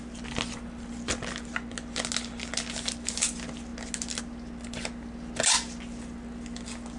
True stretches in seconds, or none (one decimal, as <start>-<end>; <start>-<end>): 0.0-7.0